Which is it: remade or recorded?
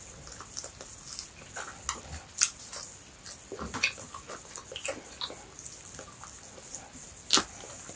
recorded